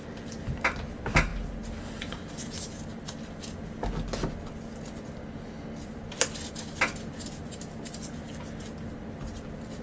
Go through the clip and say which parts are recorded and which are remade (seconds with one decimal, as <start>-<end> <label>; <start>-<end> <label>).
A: 0.0-9.8 recorded